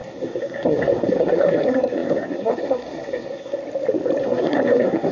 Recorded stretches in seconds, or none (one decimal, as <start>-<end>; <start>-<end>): 3.6-4.2